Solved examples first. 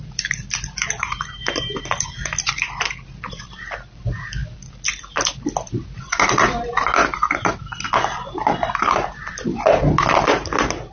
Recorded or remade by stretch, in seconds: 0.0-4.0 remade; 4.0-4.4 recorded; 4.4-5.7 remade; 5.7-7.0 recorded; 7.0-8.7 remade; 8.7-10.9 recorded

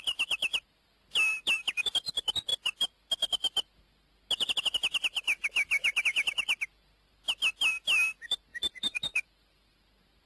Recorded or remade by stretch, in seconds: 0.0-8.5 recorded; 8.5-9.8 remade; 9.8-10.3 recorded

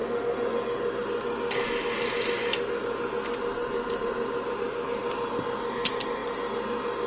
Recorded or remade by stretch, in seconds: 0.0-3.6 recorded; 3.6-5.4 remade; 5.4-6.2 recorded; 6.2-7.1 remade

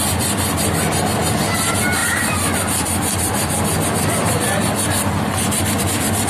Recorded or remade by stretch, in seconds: 0.0-6.3 recorded

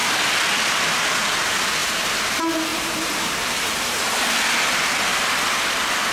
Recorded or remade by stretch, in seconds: 0.0-2.7 recorded; 2.7-4.3 remade; 4.3-6.1 recorded